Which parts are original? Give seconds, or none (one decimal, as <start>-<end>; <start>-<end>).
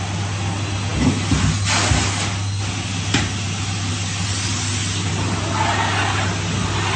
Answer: 0.0-7.0